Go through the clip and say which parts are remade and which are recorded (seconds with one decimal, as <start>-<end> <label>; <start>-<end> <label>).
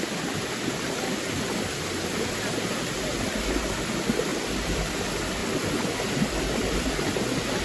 0.0-4.3 recorded; 4.3-4.9 remade; 4.9-5.4 recorded; 5.4-6.9 remade; 6.9-7.6 recorded